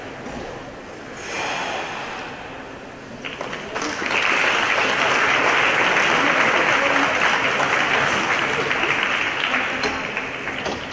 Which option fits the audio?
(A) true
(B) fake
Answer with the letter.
A